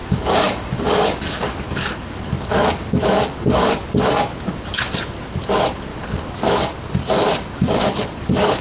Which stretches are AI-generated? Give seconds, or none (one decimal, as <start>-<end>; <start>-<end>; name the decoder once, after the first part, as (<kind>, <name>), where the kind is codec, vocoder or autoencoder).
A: 0.0-3.7 (codec, DAC); 5.9-8.6